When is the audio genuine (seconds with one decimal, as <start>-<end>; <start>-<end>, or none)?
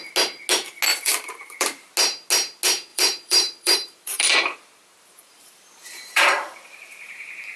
0.0-0.9; 1.9-2.9